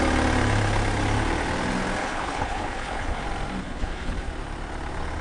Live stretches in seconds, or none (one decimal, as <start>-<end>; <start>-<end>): 0.0-2.0; 3.2-3.6; 4.3-5.2